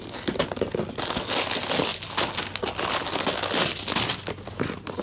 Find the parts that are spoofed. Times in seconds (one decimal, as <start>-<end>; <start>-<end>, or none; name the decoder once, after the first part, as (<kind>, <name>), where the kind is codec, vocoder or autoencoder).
none